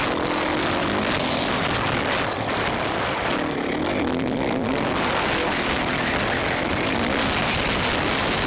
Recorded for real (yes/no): yes